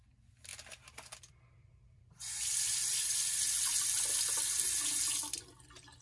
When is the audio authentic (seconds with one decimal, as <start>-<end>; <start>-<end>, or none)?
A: 0.0-6.0